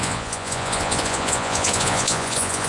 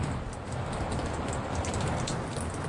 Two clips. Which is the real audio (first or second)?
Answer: second